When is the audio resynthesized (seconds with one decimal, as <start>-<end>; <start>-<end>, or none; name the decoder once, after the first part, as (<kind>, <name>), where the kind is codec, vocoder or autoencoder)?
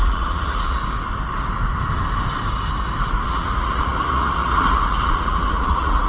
0.0-0.8 (vocoder, Vocos); 3.3-6.1